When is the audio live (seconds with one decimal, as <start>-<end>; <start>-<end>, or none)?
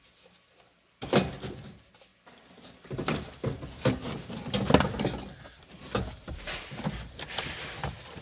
0.0-8.2